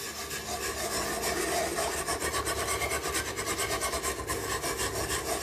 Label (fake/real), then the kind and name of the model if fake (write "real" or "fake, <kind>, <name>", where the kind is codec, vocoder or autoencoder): real